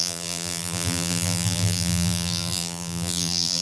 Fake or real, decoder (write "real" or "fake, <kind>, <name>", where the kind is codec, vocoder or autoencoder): fake, vocoder, BigVGAN v2